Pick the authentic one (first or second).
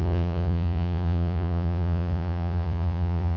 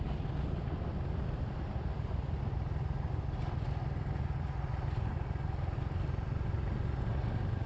second